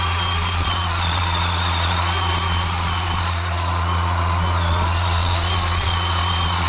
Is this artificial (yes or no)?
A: yes